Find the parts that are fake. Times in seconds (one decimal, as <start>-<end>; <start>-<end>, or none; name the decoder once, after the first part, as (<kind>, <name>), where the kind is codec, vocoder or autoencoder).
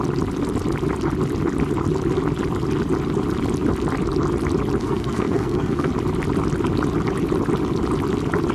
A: 4.8-5.9 (codec, SNAC)